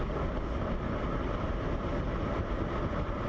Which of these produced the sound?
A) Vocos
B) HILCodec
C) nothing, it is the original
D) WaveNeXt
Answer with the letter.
C